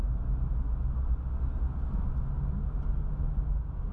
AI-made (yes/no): no